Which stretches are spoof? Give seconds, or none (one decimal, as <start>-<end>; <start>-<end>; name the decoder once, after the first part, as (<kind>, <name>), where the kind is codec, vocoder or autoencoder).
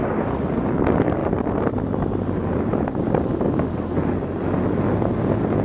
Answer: none